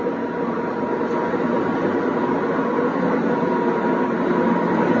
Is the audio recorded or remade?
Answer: recorded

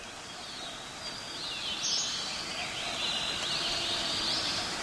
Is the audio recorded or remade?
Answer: recorded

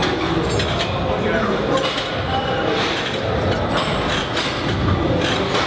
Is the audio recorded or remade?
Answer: recorded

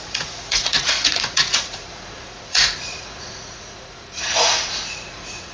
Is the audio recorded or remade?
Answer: remade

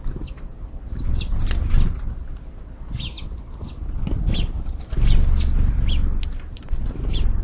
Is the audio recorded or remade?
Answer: recorded